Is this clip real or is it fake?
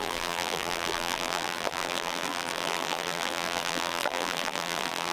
fake